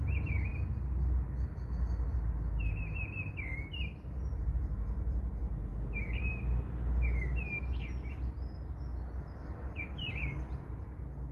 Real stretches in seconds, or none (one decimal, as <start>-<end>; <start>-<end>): 0.0-11.3